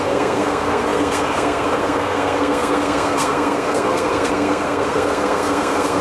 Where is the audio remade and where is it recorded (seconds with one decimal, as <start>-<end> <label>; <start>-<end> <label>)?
0.0-6.0 remade